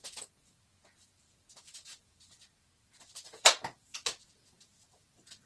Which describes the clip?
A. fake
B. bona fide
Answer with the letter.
A